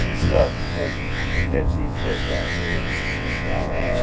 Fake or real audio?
fake